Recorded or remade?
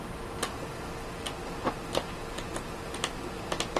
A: recorded